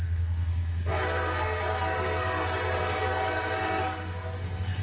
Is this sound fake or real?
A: fake